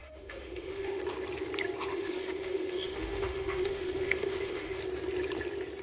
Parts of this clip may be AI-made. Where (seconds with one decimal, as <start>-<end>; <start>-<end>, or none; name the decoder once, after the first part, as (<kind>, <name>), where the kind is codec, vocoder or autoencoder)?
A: 0.0-1.0 (autoencoder, DAC-VAE); 1.9-4.8